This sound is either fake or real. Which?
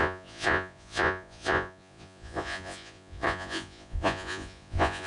fake